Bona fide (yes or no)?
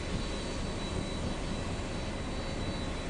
yes